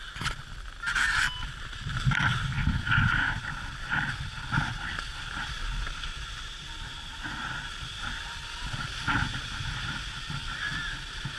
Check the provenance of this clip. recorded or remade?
recorded